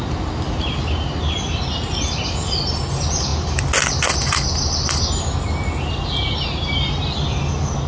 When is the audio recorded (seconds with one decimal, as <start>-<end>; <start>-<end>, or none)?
0.0-7.9